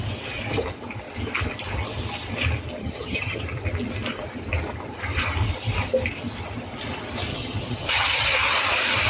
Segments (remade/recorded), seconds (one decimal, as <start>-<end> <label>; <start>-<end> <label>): 0.0-2.8 recorded; 2.8-3.4 remade; 3.4-7.3 recorded; 7.3-8.5 remade; 8.5-9.1 recorded